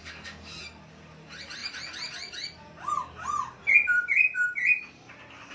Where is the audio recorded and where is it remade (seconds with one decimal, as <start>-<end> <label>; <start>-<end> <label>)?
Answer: 0.0-0.6 remade; 0.6-5.5 recorded